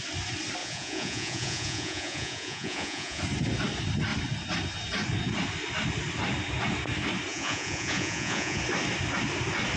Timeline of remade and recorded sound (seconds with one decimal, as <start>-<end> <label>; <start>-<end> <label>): 0.0-0.6 recorded; 0.6-3.2 remade; 3.2-7.3 recorded; 7.3-8.6 remade; 8.6-9.8 recorded